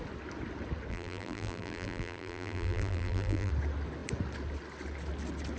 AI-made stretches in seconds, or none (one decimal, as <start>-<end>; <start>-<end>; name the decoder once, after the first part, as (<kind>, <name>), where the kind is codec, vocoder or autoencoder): 0.9-3.5 (vocoder, BigVGAN v2)